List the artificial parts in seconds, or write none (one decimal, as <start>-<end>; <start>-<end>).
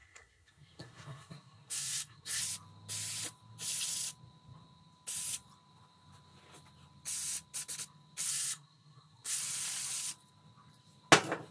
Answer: 0.0-2.4; 8.3-9.4